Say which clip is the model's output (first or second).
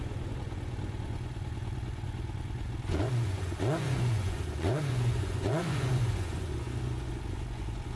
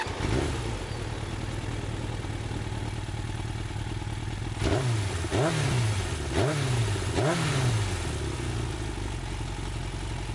first